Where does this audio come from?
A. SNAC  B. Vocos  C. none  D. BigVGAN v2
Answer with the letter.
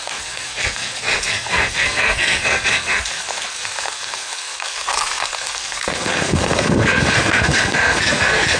A